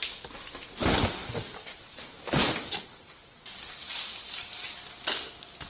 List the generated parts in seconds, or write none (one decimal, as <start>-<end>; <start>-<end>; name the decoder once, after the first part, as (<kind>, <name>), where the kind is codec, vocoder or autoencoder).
none